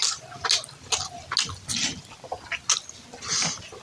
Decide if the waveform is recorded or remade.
recorded